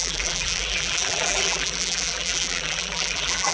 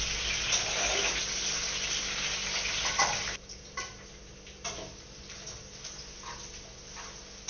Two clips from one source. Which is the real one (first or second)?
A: second